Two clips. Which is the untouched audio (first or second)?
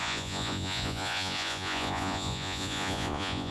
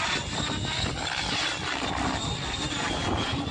second